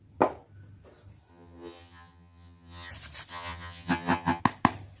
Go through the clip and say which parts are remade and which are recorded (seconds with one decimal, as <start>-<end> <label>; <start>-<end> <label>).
0.0-1.3 recorded; 1.3-2.9 remade; 2.9-3.3 recorded; 3.3-4.4 remade; 4.4-5.0 recorded